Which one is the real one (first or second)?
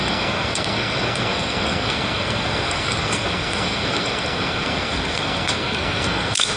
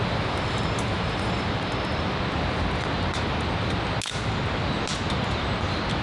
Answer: second